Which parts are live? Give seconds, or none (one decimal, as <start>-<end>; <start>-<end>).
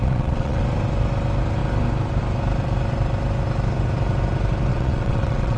0.6-4.7